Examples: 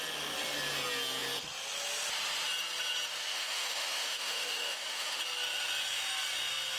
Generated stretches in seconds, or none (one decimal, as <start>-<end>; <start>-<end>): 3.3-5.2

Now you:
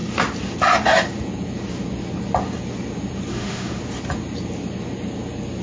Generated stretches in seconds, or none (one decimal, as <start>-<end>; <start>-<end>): 3.3-3.8

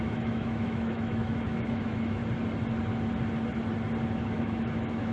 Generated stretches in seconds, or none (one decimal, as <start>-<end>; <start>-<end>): 0.0-2.2; 4.3-5.1

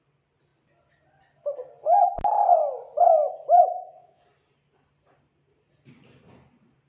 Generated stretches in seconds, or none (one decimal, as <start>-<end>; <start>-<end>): 3.2-4.2

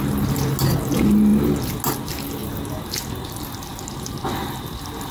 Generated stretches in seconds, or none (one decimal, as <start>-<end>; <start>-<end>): none

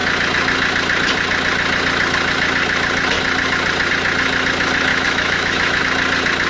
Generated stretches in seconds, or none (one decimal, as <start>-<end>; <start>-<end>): 4.9-5.8